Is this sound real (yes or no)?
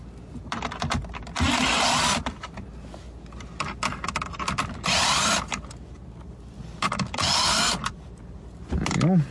yes